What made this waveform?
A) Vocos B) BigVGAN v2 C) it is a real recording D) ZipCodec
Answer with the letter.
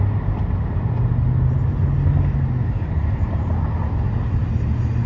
C